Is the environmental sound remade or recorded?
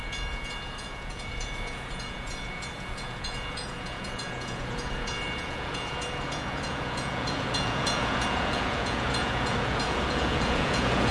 remade